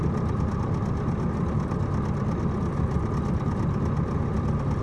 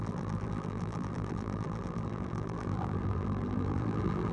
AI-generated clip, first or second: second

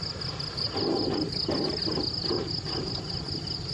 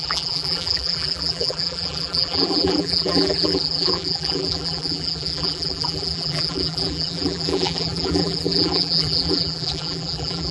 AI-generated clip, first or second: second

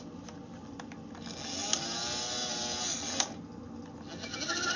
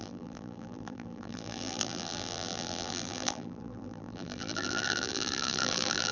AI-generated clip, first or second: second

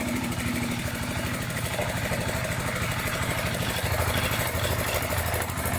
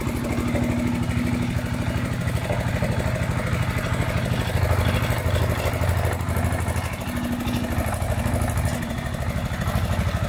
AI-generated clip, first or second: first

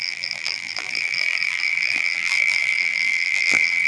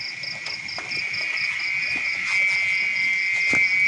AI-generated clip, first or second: first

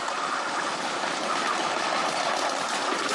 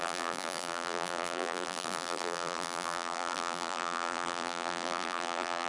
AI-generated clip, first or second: second